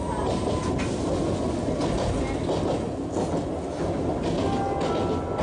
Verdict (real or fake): real